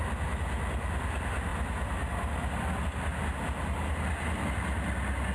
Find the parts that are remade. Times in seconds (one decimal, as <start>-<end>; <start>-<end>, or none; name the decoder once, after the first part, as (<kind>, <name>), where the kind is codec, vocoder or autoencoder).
none